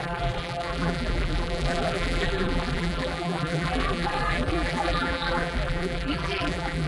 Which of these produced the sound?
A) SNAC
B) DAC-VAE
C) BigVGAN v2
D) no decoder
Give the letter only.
C